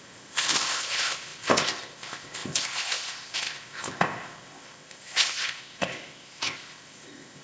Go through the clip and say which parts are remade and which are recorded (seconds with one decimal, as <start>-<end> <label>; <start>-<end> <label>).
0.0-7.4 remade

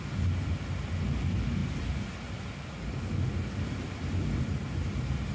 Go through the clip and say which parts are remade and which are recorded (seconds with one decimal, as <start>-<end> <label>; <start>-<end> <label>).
0.0-5.3 recorded

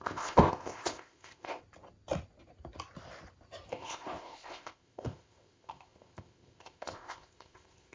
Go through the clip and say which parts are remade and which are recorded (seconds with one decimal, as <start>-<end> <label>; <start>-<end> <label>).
0.0-1.6 remade; 1.6-3.7 recorded; 3.7-7.9 remade